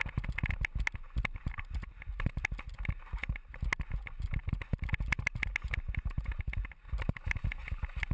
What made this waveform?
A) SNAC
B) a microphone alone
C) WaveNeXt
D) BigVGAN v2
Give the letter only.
B